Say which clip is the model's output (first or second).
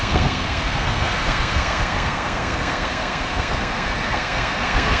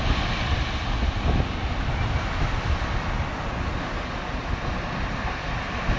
first